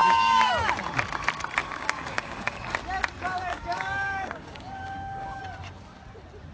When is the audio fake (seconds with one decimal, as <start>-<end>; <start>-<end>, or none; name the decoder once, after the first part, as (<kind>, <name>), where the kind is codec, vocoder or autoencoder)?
0.0-0.5 (codec, DAC); 1.6-2.6; 3.5-5.4